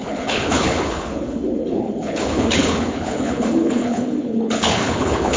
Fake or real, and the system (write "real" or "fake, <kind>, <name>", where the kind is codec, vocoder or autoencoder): fake, codec, HILCodec